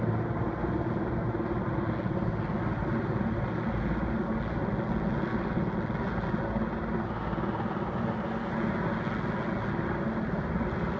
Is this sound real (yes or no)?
yes